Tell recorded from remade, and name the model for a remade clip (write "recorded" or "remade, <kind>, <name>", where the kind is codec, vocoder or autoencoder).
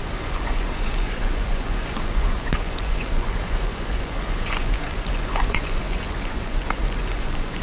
remade, vocoder, Vocos